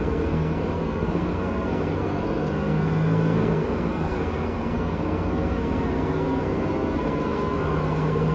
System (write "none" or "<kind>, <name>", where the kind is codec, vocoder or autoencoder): codec, SNAC